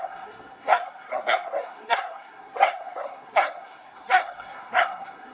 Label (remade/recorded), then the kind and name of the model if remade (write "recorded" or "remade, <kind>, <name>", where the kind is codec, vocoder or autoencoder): remade, codec, SNAC